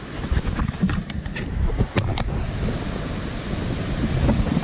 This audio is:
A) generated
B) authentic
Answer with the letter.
B